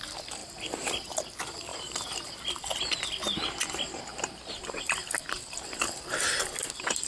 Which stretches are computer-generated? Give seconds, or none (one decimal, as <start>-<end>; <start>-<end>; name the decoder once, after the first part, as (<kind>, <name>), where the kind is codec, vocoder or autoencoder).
0.4-0.9 (vocoder, BigVGAN v2); 1.7-2.3; 4.1-5.1